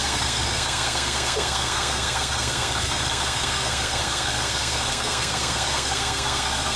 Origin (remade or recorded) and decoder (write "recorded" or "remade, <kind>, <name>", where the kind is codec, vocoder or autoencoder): remade, codec, SNAC